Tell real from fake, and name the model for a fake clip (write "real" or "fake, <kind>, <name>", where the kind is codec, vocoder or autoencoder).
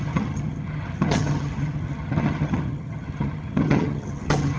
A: fake, vocoder, HiFi-GAN